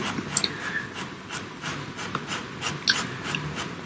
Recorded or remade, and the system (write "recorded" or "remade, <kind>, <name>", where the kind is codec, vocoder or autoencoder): recorded